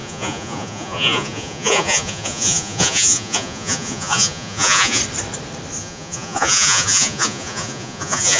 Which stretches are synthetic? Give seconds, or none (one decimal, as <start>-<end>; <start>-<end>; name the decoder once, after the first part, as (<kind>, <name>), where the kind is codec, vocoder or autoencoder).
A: 0.0-5.0 (vocoder, Vocos); 5.8-8.4